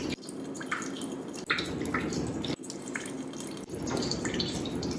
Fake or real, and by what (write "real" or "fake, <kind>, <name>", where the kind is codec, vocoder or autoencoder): real